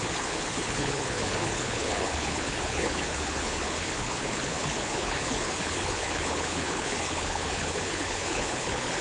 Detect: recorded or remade remade